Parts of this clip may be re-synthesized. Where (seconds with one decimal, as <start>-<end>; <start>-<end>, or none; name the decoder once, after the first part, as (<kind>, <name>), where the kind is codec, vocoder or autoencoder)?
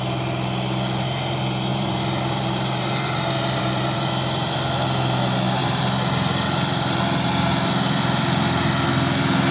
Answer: 1.7-4.1 (vocoder, BigVGAN v2); 5.6-7.0